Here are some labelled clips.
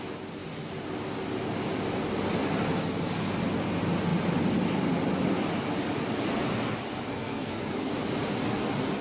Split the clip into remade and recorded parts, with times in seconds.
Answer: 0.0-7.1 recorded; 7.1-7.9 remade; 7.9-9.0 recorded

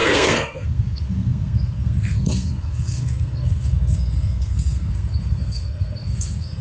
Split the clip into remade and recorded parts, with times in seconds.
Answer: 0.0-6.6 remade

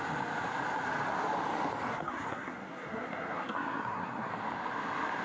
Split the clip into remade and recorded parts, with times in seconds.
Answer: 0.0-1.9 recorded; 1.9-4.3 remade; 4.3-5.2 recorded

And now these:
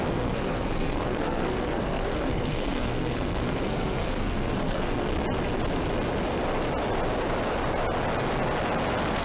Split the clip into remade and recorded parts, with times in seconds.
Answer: 0.0-5.1 remade; 5.1-9.2 recorded

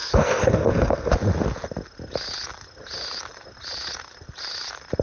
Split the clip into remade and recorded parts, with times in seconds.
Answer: 0.0-1.1 remade; 1.1-5.0 recorded